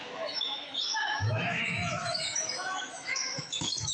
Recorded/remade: remade